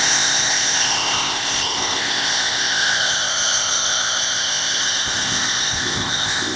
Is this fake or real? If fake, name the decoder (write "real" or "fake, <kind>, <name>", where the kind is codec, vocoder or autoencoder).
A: fake, codec, ZipCodec